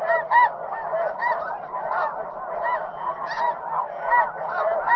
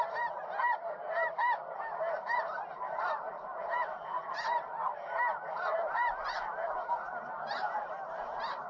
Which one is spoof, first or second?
second